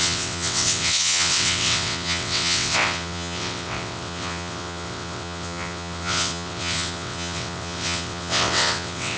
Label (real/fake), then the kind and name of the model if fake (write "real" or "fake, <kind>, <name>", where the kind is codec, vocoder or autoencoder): fake, vocoder, WaveNeXt